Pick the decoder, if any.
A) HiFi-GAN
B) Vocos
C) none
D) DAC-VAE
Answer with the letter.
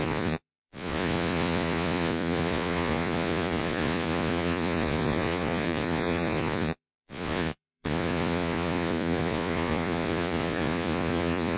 B